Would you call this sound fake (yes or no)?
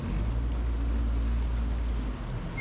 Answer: no